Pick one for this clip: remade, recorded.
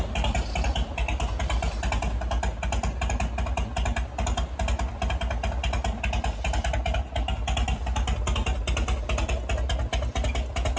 recorded